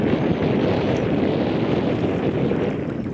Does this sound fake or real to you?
real